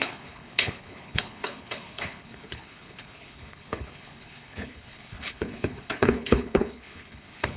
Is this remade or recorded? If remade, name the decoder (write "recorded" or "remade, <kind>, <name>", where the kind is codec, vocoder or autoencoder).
remade, codec, HILCodec